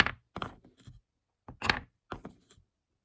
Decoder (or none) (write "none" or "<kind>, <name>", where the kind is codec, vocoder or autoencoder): none